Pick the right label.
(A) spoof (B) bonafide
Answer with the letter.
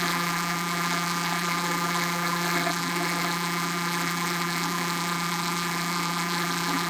A